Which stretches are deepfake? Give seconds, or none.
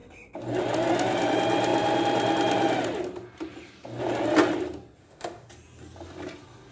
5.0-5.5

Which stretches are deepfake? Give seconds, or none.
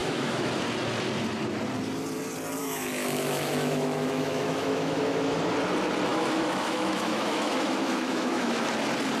0.0-0.5; 2.6-5.4; 6.1-8.7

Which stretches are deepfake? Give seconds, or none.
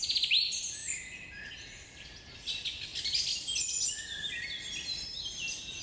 none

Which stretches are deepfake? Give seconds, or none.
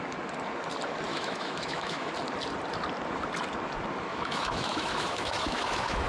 1.1-2.1; 4.1-6.1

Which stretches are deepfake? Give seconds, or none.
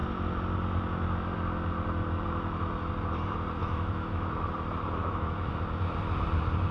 3.6-4.5; 5.0-5.5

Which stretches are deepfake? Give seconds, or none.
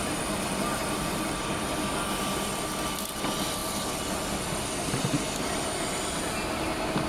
none